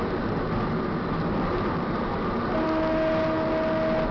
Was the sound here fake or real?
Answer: real